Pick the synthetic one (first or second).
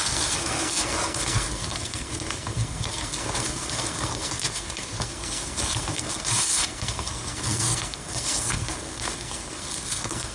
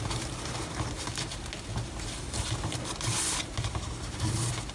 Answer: first